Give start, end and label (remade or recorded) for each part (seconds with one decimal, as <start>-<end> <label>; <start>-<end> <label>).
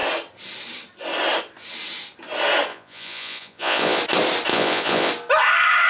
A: 0.0-2.7 recorded; 2.7-4.0 remade; 4.0-4.5 recorded; 4.5-5.1 remade; 5.1-5.9 recorded